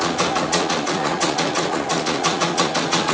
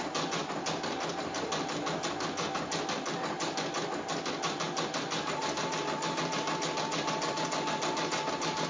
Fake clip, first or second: first